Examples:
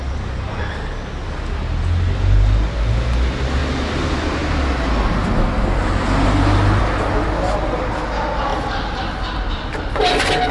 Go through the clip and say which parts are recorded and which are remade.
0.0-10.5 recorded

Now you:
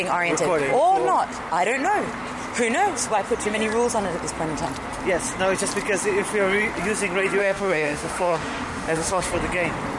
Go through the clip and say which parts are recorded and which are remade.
0.0-7.4 recorded; 7.4-9.3 remade; 9.3-10.0 recorded